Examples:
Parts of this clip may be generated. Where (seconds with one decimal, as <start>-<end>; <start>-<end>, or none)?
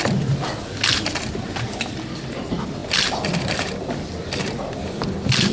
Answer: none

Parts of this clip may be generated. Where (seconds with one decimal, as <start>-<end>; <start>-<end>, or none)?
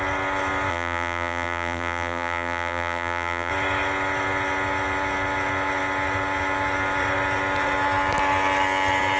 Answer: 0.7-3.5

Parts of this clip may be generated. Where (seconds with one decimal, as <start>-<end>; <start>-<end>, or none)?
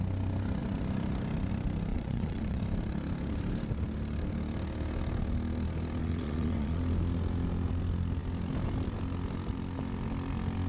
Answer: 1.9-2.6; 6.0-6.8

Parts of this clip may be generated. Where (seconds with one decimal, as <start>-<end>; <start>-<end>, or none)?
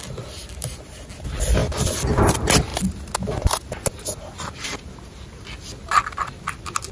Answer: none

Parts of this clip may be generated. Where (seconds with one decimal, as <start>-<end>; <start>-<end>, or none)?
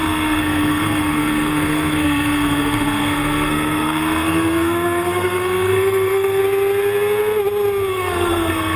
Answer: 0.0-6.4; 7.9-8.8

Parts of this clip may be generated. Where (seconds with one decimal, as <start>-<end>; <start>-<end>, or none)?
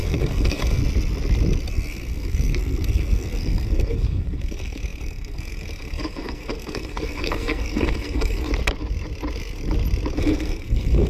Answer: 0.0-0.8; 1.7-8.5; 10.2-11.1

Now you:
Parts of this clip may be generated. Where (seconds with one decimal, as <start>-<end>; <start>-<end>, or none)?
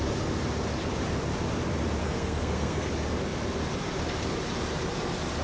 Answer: 2.0-2.9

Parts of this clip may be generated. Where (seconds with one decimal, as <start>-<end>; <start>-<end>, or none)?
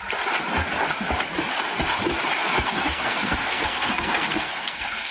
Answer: 2.4-5.1